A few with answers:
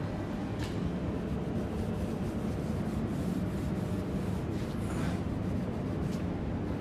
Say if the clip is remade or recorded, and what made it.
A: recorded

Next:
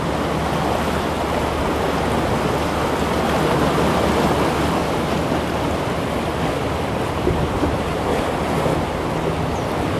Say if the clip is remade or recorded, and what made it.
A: recorded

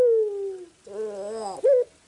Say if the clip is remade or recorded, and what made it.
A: recorded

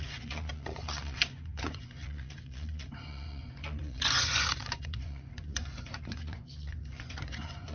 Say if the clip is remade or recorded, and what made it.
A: remade, vocoder, Vocos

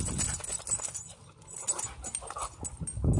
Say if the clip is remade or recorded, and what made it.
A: recorded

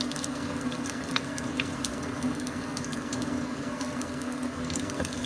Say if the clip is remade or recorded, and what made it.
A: remade, codec, SNAC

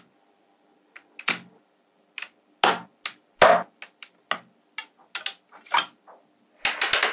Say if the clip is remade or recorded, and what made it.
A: recorded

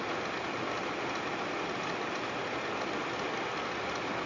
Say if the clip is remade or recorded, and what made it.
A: recorded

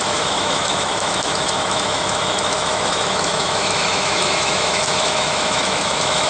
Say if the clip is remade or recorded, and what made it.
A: remade, autoencoder, DAC-VAE